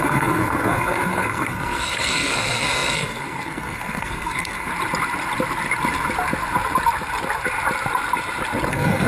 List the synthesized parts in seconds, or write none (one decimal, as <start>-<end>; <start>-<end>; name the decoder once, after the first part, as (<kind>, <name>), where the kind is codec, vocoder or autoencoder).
0.0-4.7 (codec, SNAC); 8.7-9.1